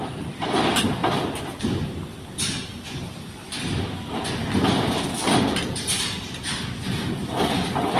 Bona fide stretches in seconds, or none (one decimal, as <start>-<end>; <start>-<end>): 0.0-8.0